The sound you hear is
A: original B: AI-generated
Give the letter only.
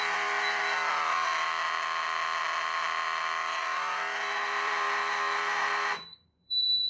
B